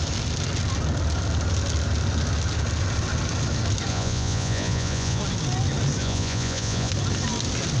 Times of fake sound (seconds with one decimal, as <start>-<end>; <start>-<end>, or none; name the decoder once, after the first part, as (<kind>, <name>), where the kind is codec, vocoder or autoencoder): 3.9-5.2 (vocoder, Vocos); 6.0-6.9